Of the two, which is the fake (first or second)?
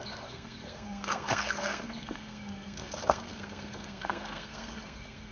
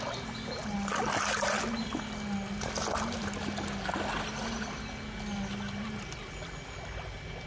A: first